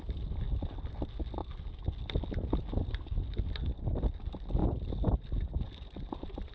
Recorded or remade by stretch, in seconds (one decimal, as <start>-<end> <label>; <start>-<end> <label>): 0.0-6.5 recorded